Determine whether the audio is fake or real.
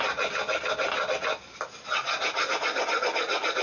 real